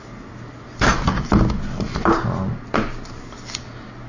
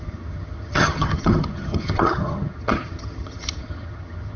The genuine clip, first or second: first